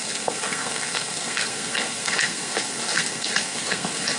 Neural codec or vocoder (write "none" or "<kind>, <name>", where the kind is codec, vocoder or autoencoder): codec, SNAC